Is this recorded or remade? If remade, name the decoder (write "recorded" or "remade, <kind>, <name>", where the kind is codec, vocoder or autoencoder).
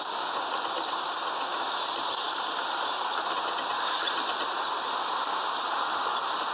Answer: remade, vocoder, BigVGAN v2